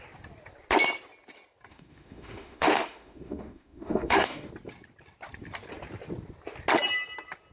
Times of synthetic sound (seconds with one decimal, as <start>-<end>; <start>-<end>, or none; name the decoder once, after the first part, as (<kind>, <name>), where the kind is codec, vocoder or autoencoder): 1.7-4.5 (autoencoder, DAC-VAE)